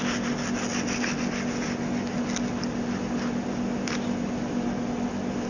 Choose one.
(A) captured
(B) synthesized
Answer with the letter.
A